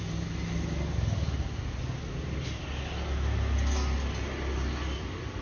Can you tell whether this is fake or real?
real